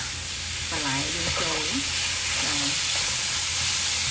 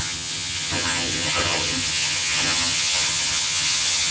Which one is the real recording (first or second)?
first